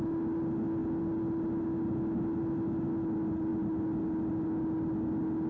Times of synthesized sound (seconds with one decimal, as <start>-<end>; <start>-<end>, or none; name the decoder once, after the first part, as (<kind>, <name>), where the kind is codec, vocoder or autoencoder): none